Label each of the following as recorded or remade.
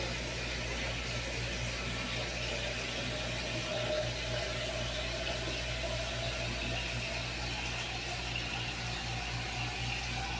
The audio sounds recorded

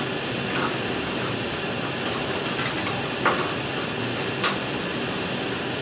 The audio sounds recorded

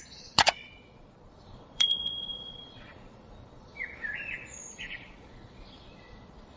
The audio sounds remade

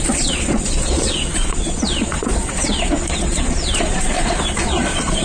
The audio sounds remade